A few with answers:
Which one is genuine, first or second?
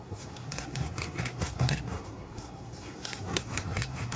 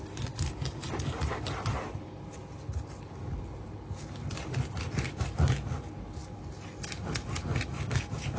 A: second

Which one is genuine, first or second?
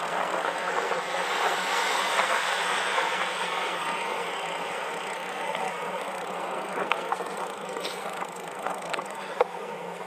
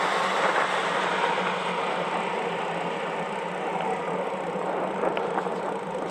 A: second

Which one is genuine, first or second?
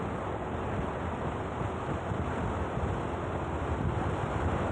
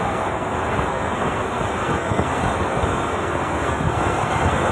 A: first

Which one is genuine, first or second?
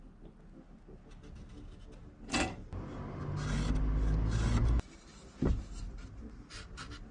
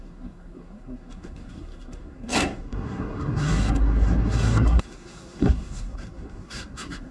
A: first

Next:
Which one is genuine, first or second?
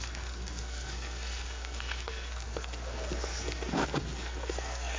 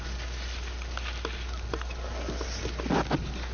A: second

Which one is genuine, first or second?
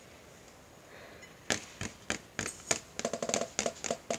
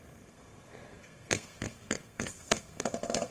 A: first